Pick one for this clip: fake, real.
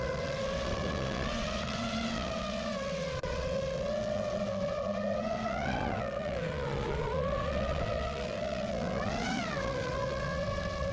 fake